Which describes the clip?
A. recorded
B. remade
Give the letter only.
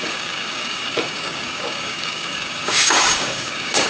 B